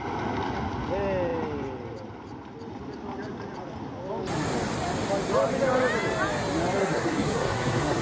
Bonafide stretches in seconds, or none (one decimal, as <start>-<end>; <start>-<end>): 0.0-6.8